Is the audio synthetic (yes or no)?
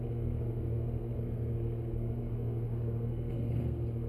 yes